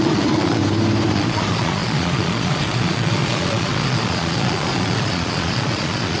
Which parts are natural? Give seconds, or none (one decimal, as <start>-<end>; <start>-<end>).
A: 0.6-1.1